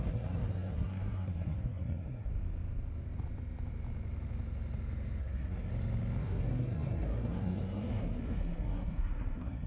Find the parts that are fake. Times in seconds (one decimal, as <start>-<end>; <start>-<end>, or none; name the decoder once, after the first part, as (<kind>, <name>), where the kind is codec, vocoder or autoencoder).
0.0-2.3 (codec, SNAC); 5.2-5.7; 6.2-9.7